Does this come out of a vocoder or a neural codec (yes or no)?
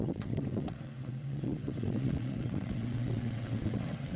yes